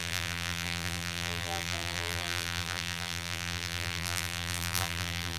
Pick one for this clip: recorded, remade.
remade